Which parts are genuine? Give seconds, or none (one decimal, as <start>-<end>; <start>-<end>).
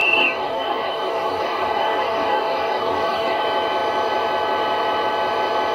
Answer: 3.4-5.7